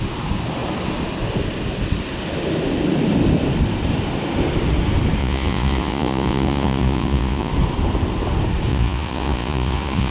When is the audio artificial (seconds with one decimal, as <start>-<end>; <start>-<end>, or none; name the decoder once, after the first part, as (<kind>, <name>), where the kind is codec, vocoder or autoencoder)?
5.2-7.5 (vocoder, Vocos); 8.7-10.1